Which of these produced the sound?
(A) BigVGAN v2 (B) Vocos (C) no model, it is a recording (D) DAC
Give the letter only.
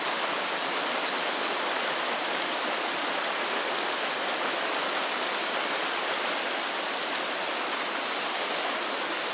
C